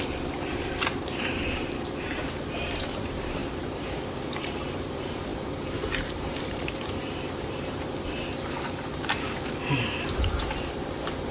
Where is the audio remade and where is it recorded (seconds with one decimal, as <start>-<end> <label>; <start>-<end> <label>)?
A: 0.0-11.3 remade